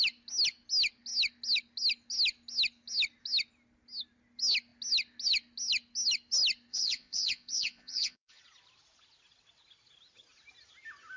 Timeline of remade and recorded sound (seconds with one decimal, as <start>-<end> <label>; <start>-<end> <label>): 0.0-6.7 recorded; 6.7-8.4 remade; 8.4-11.2 recorded